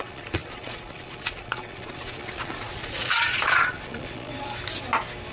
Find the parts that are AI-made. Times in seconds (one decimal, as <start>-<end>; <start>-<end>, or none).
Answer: 0.0-4.3